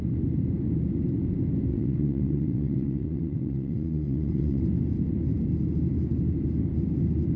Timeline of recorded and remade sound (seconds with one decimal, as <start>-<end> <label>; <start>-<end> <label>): 0.0-1.7 recorded; 1.7-4.6 remade; 4.6-7.4 recorded